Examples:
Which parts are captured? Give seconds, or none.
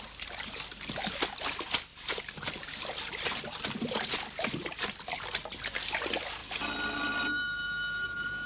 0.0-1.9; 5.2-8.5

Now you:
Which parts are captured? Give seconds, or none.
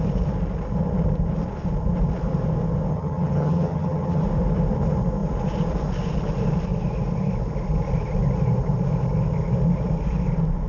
0.0-2.9; 4.2-10.7